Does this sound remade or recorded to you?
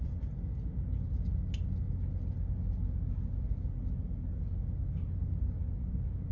recorded